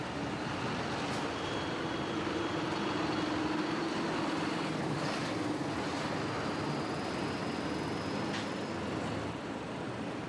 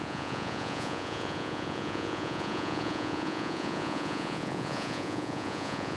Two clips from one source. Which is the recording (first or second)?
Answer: first